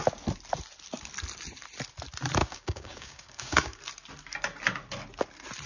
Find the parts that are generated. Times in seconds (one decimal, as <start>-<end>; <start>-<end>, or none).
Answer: 2.4-3.8